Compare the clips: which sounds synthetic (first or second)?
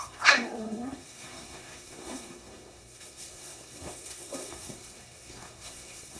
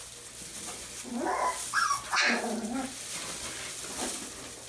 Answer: first